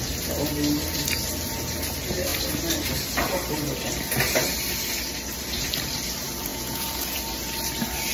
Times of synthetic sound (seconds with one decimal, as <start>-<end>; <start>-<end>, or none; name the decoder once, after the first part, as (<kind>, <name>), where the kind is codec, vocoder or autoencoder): 6.5-7.2 (vocoder, Vocos)